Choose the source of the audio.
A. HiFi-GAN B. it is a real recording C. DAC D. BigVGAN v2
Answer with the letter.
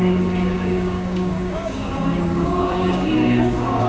C